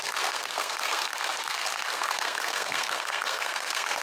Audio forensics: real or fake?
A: fake